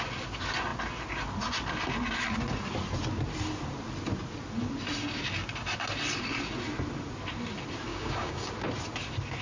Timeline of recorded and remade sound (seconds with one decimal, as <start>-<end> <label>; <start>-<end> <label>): 0.0-7.9 recorded; 7.9-8.5 remade; 8.5-9.4 recorded